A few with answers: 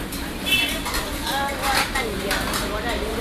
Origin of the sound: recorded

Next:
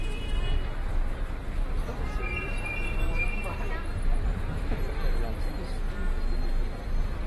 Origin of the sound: recorded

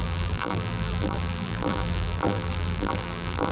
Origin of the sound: remade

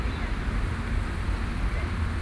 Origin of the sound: recorded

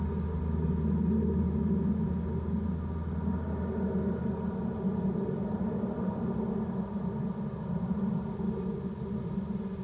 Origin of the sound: recorded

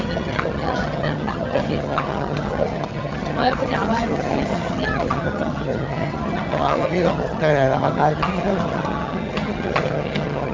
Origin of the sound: remade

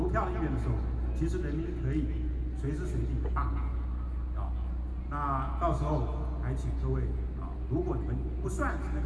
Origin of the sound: recorded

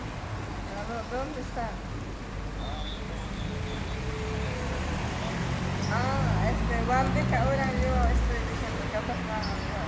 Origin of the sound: recorded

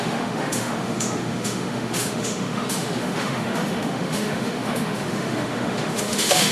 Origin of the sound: remade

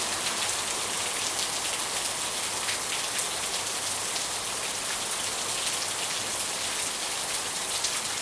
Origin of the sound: recorded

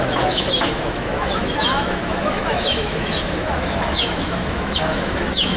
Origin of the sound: remade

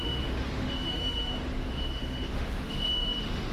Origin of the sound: remade